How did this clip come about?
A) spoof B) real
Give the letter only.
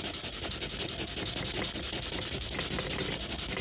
B